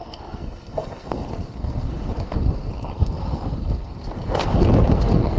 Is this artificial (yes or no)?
yes